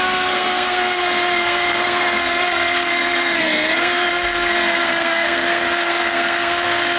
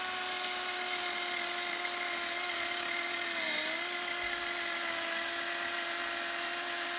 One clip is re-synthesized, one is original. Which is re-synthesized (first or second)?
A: first